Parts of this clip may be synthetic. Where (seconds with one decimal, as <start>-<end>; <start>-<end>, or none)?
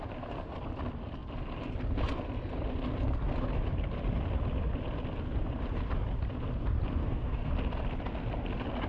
7.0-7.5